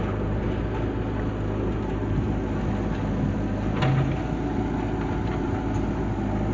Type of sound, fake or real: real